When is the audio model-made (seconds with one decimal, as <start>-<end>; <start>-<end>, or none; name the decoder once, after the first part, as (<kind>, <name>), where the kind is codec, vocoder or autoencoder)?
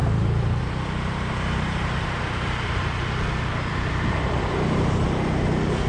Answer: 0.0-3.1 (vocoder, BigVGAN v2); 3.7-5.0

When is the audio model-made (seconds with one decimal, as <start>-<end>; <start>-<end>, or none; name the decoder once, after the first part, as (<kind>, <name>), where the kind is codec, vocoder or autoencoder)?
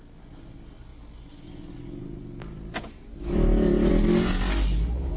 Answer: none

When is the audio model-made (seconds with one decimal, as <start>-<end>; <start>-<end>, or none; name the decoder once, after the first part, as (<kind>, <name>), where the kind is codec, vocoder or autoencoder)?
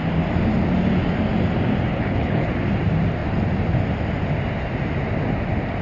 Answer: 1.9-2.5 (codec, HILCodec)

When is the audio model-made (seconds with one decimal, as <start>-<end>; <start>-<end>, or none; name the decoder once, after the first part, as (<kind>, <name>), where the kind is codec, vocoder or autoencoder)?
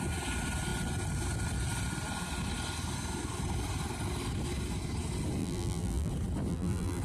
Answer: 5.4-6.1 (vocoder, BigVGAN v2); 6.5-7.0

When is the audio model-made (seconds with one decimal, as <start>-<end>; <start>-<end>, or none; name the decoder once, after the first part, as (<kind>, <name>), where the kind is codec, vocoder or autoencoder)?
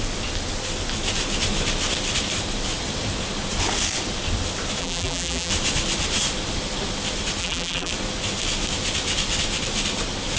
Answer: 4.8-5.5 (vocoder, BigVGAN v2); 7.4-7.9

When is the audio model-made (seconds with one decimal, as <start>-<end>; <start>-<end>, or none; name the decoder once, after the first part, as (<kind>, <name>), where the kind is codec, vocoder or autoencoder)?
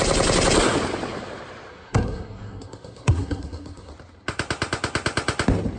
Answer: 1.7-3.9 (codec, SNAC)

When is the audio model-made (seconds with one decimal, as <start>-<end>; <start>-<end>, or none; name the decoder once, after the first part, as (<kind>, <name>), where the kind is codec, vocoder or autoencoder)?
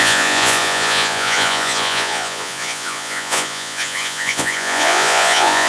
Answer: 0.0-5.7 (vocoder, Vocos)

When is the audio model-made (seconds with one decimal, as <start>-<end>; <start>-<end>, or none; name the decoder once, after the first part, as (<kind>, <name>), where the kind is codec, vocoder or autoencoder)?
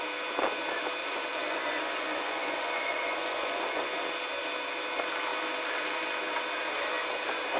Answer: 1.0-3.8 (vocoder, Vocos)